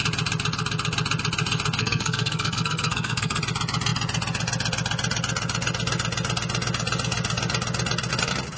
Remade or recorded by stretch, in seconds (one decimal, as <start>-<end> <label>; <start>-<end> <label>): 0.0-1.8 recorded; 1.8-3.4 remade; 3.4-8.6 recorded